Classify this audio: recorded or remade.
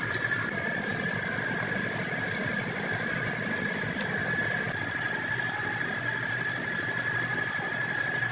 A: recorded